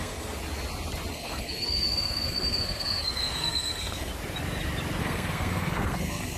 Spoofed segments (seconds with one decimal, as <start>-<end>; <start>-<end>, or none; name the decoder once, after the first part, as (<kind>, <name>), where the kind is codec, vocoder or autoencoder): 0.0-0.4 (codec, SNAC); 1.1-4.1; 5.0-6.4